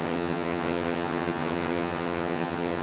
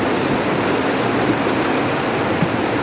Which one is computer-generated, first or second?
first